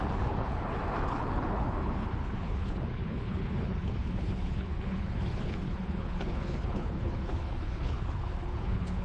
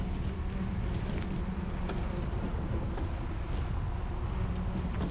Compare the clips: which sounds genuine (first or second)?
second